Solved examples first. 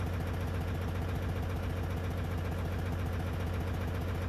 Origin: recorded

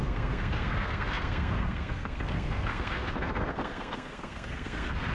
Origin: remade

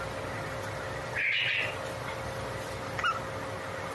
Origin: recorded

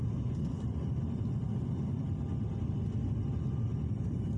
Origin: remade